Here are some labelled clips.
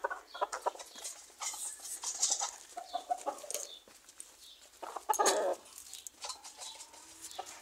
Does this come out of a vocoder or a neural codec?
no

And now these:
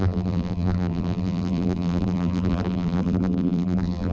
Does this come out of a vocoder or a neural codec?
yes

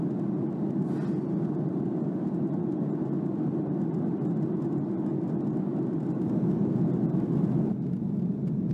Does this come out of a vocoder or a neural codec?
no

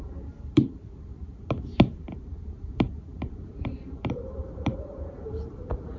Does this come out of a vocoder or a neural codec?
yes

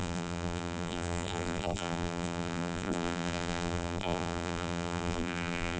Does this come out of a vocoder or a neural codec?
yes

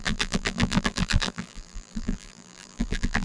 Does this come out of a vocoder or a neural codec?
yes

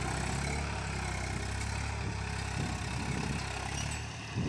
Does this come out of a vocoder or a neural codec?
no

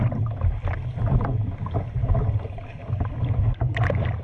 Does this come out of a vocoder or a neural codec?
no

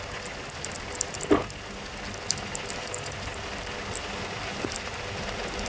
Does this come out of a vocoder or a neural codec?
no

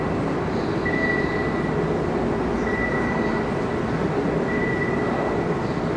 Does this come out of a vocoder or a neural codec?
no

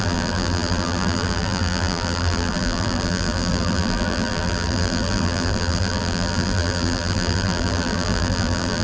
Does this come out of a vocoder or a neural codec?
yes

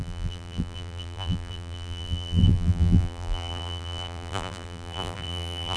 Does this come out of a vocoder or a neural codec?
yes